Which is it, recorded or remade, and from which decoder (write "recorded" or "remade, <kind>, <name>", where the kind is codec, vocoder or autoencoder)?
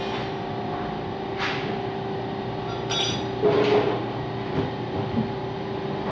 recorded